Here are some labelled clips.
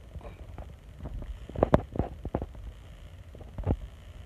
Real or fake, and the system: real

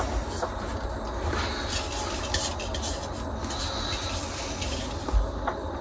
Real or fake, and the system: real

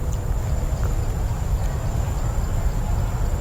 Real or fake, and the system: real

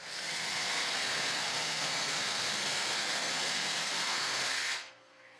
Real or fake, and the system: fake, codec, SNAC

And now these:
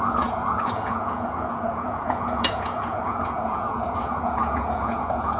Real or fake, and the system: fake, vocoder, Vocos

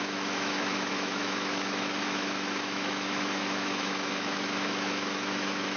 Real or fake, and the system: fake, autoencoder, DAC-VAE